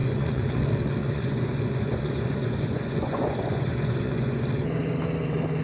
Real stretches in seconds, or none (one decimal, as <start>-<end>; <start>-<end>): 0.6-1.0; 4.4-5.6